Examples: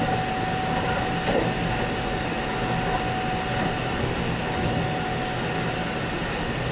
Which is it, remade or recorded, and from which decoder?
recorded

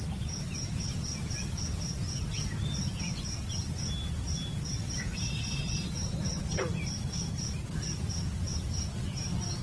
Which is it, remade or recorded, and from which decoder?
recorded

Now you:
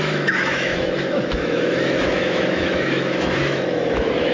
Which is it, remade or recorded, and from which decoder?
remade, autoencoder, DAC-VAE